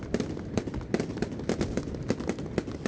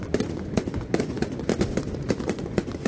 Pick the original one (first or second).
first